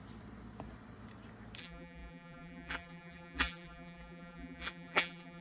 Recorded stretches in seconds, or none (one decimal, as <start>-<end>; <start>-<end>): 0.0-1.6